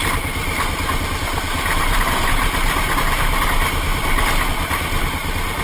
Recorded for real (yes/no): yes